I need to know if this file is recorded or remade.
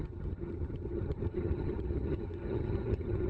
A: remade